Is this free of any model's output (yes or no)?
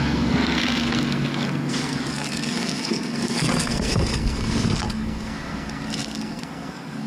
no